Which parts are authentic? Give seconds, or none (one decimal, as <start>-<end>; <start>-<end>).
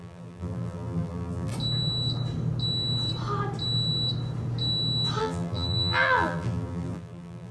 1.5-5.2